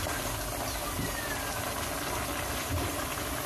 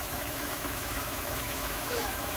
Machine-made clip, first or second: second